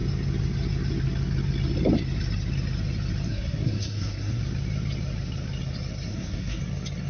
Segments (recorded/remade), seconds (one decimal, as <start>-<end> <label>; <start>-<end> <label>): 0.0-3.3 recorded; 3.3-4.4 remade; 4.4-6.1 recorded; 6.1-6.6 remade; 6.6-7.1 recorded